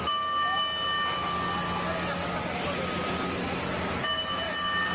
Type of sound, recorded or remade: recorded